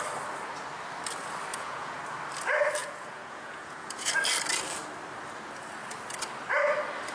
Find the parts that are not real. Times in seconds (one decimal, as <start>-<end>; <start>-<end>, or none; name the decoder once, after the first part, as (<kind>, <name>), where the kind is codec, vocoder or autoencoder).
1.5-2.0 (vocoder, Vocos); 2.8-4.1